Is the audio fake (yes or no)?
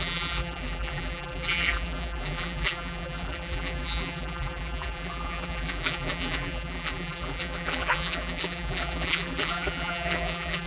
yes